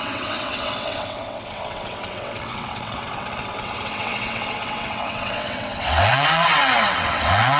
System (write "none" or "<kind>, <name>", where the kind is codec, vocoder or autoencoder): vocoder, WaveNeXt